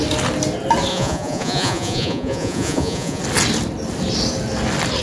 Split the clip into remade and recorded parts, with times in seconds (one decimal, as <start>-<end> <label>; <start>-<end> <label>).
0.0-0.9 recorded; 0.9-3.2 remade; 3.2-5.0 recorded